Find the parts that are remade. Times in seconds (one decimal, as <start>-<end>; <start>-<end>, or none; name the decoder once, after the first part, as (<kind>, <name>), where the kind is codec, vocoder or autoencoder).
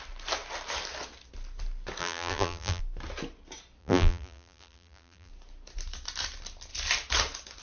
2.0-2.8 (vocoder, BigVGAN v2); 3.8-5.3